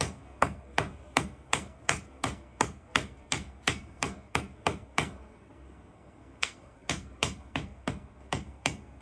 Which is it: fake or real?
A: fake